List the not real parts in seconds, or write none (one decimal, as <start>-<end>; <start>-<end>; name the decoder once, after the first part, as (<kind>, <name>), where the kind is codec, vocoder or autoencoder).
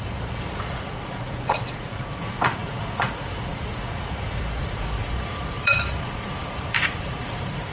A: 0.0-7.7 (vocoder, Vocos)